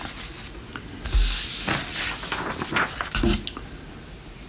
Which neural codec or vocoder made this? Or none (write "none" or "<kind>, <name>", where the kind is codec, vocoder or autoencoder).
none